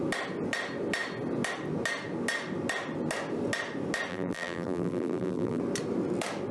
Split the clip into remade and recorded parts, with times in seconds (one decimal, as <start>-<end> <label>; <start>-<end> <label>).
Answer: 0.0-4.1 recorded; 4.1-5.6 remade; 5.6-6.5 recorded